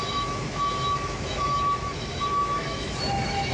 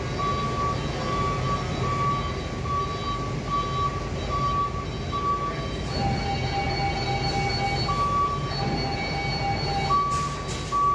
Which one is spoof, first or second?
first